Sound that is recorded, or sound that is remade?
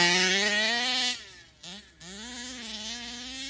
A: recorded